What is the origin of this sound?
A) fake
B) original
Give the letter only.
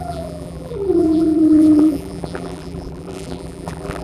A